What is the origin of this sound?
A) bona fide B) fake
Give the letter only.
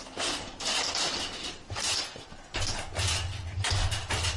A